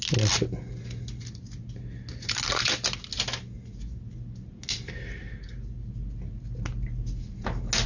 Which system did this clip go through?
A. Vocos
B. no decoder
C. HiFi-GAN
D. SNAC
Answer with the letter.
B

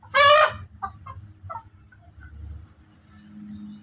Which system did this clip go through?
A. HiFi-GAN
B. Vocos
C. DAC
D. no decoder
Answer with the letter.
D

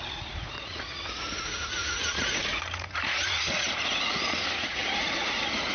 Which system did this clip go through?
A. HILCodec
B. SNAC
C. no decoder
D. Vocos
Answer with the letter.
D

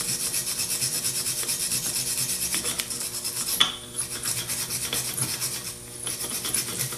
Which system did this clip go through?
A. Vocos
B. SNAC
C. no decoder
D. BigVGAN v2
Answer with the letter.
C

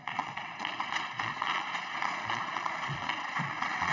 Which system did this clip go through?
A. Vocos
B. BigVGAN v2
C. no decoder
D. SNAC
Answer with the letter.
A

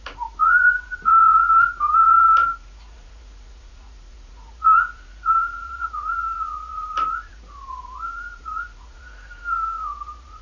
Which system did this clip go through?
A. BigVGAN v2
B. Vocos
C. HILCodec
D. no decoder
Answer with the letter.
B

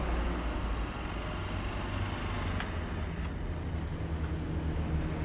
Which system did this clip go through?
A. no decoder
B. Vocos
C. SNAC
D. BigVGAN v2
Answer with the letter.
A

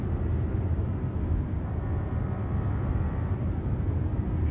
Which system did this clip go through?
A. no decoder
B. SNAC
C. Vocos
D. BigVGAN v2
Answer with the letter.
A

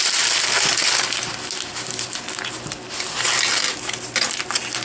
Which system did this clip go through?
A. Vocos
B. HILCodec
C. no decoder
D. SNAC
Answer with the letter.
C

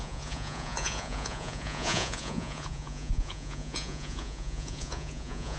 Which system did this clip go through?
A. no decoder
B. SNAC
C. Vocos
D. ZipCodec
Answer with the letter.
C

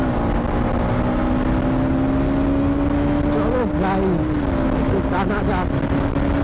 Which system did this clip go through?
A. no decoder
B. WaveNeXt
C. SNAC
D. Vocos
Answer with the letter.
A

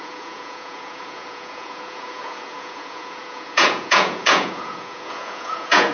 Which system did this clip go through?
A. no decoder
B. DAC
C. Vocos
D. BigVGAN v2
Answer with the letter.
C